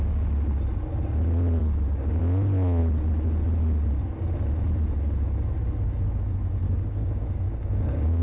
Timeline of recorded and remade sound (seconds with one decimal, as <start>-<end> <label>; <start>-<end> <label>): 0.0-6.6 recorded; 6.6-8.2 remade